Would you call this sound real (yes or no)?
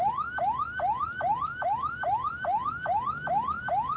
yes